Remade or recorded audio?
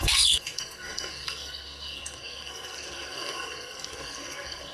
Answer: remade